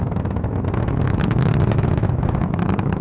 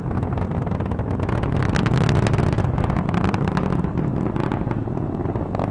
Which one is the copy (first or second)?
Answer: first